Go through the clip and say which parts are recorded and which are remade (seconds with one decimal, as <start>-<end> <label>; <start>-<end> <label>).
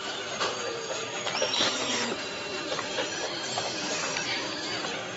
0.0-5.2 remade